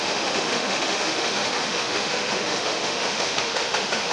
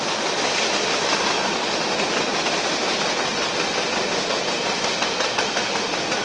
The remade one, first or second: first